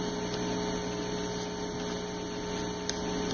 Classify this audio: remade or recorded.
recorded